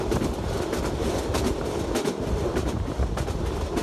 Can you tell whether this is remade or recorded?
recorded